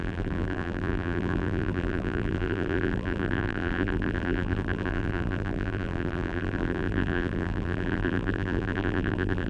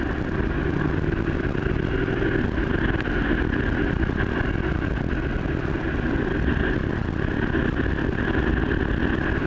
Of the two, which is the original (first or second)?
second